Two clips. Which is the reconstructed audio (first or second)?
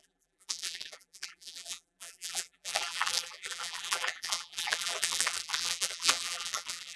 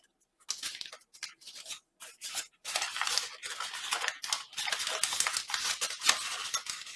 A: first